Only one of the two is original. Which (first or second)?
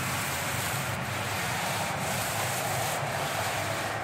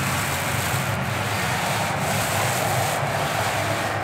second